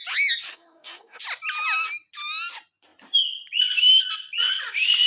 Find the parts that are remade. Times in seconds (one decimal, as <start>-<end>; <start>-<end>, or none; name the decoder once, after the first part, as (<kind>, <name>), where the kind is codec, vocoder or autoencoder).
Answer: 0.5-1.2 (codec, DAC)